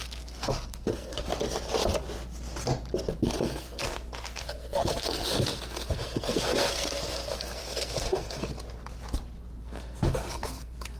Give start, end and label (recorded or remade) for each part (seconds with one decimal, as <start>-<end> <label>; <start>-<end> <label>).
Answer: 0.0-1.3 remade; 1.3-3.4 recorded; 3.4-8.5 remade; 8.5-9.6 recorded; 9.6-11.0 remade